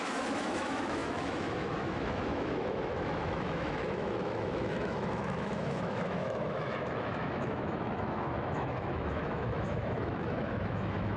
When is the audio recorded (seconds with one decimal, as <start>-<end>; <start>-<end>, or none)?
none